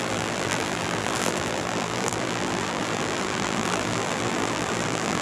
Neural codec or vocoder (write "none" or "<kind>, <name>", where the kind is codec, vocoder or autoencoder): vocoder, BigVGAN v2